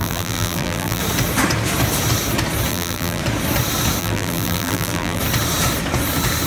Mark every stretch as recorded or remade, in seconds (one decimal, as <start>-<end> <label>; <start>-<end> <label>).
0.0-1.0 remade; 1.0-2.7 recorded; 2.7-3.2 remade; 3.2-4.0 recorded; 4.0-5.2 remade; 5.2-6.5 recorded